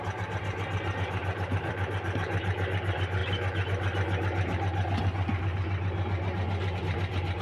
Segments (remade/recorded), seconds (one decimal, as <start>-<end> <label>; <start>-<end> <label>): 0.0-3.2 remade; 3.2-6.8 recorded; 6.8-7.4 remade